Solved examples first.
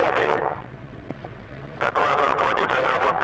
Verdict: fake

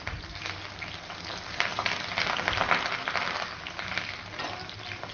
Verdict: real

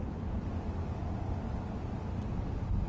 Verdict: real